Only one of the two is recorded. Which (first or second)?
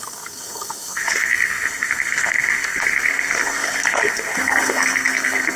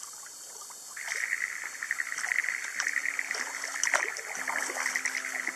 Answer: second